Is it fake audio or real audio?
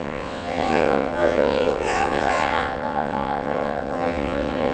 fake